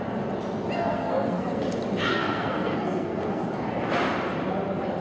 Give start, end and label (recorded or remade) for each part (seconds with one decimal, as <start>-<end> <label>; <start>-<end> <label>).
0.0-0.8 recorded; 0.8-1.6 remade; 1.6-2.1 recorded; 2.1-3.4 remade; 3.4-5.0 recorded